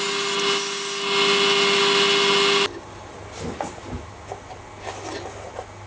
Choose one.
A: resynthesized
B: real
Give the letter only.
B